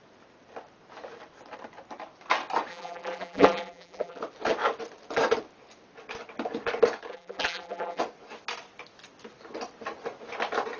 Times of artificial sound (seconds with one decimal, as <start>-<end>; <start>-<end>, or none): 2.7-4.2; 7.1-8.0